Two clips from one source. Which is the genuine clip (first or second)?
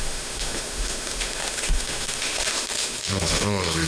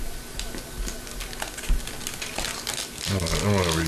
second